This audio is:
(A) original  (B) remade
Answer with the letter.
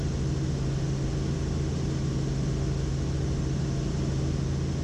A